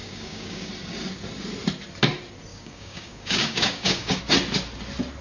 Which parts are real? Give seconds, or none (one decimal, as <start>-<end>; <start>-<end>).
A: 0.7-2.5; 4.2-5.2